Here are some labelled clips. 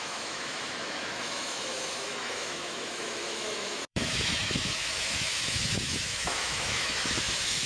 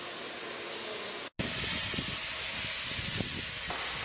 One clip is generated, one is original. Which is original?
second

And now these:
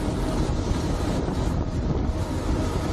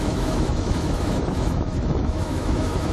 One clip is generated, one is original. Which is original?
first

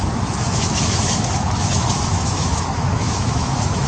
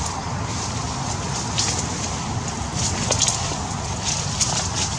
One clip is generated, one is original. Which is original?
second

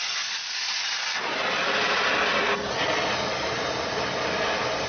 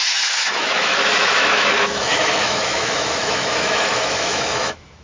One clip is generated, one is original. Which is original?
first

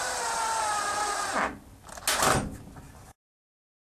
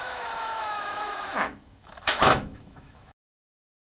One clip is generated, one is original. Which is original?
first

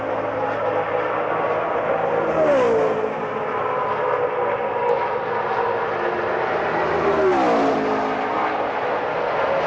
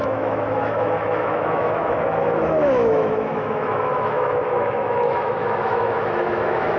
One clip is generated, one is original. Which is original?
first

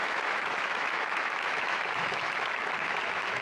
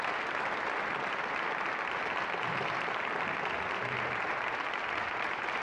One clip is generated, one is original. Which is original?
second